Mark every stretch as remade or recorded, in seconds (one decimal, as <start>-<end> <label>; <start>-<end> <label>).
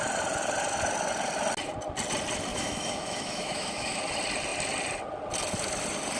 0.0-2.5 recorded; 2.5-4.0 remade; 4.0-6.2 recorded